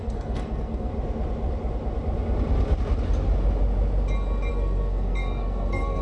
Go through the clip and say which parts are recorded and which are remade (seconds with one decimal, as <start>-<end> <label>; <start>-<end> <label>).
0.0-0.9 remade; 0.9-4.5 recorded; 4.5-6.0 remade